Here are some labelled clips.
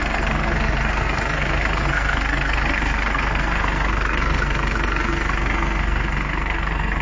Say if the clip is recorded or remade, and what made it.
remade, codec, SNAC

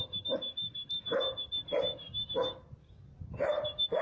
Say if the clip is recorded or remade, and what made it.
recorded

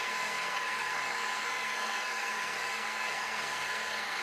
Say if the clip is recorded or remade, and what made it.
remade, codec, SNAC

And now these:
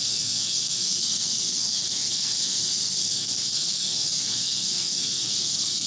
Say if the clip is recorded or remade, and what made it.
remade, codec, SNAC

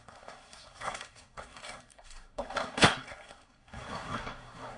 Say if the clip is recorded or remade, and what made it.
remade, codec, SNAC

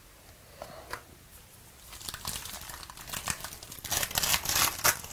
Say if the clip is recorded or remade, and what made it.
recorded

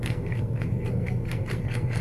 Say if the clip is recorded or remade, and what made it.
remade, codec, SNAC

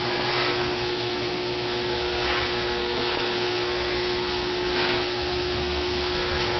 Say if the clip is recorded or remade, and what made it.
remade, codec, SNAC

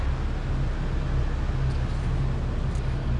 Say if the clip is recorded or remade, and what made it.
recorded